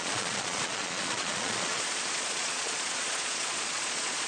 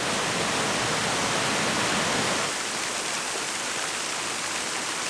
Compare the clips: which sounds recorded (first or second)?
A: second